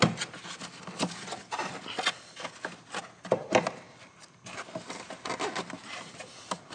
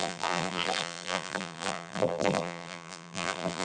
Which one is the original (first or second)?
first